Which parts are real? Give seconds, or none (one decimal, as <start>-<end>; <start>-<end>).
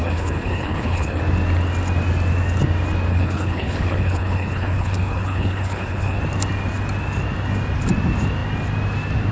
1.2-3.1; 6.2-9.3